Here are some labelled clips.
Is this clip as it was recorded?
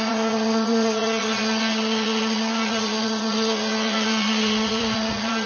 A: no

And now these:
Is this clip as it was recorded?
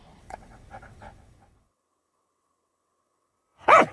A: no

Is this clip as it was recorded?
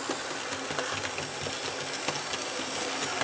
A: yes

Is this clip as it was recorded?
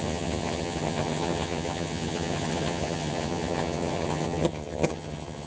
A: no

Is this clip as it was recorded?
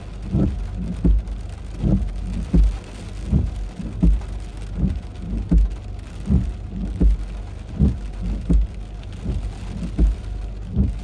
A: yes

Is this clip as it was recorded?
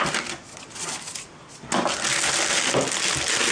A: yes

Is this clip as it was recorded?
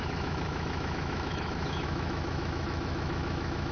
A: no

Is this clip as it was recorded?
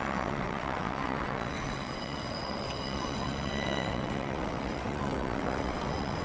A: no